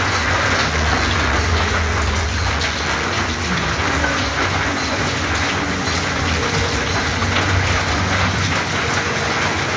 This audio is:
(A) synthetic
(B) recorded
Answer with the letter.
A